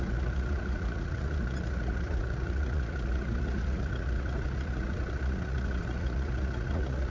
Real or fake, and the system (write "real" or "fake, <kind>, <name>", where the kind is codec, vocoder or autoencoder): fake, vocoder, Vocos